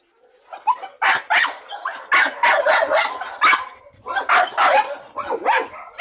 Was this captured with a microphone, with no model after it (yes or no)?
yes